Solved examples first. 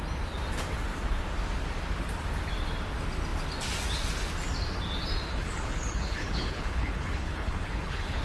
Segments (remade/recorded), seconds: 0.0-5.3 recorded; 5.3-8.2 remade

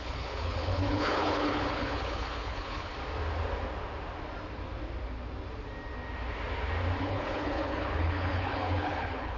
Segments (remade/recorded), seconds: 0.0-2.9 remade; 2.9-7.0 recorded; 7.0-9.4 remade

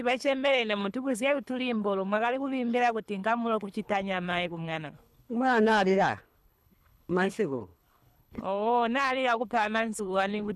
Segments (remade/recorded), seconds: 0.0-10.6 remade